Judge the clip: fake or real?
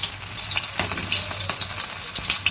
real